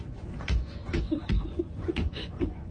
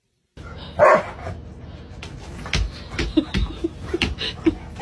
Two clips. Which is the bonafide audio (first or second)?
second